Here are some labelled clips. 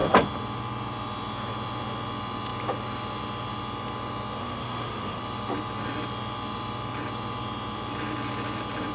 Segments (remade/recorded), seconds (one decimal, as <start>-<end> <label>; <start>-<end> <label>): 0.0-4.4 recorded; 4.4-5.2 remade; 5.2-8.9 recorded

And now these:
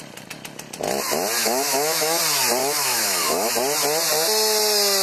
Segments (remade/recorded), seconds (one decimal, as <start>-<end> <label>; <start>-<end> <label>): 0.0-1.4 recorded; 1.4-2.2 remade; 2.2-2.6 recorded; 2.6-3.5 remade; 3.5-5.0 recorded

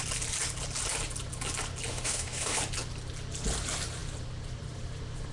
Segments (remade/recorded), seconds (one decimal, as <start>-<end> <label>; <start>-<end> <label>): 0.0-1.9 recorded; 1.9-2.6 remade; 2.6-5.3 recorded

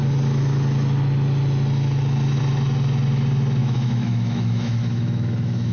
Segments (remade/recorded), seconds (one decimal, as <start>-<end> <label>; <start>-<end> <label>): 0.0-3.6 recorded; 3.6-5.7 remade

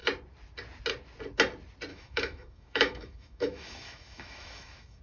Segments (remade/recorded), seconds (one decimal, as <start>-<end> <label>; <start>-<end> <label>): 0.0-1.9 recorded; 1.9-5.0 remade